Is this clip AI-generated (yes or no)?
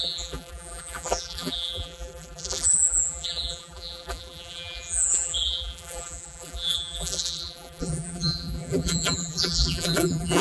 yes